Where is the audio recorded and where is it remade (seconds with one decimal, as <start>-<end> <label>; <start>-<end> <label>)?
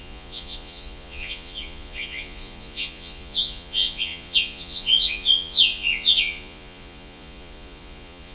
0.0-8.3 remade